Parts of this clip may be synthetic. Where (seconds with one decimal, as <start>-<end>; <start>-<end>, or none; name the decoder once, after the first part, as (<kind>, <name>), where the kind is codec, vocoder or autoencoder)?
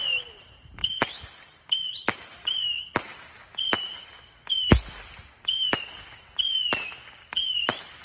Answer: 0.0-0.8 (vocoder, BigVGAN v2); 1.4-3.1; 7.4-8.0